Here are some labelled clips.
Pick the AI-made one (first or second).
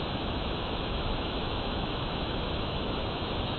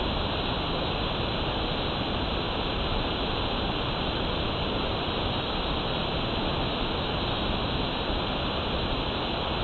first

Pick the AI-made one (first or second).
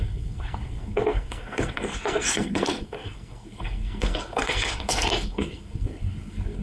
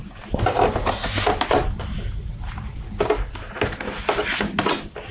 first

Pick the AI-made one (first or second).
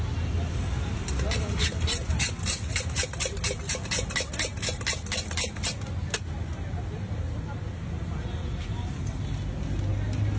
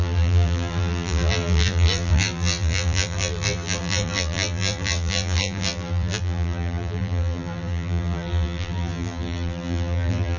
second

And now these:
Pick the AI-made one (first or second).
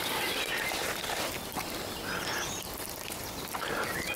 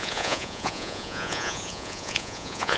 second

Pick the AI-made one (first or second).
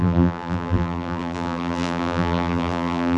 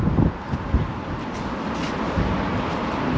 first